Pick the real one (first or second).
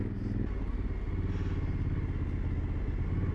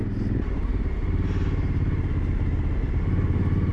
first